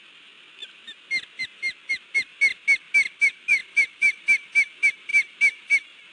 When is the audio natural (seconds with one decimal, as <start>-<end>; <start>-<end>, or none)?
0.0-3.5; 4.2-6.1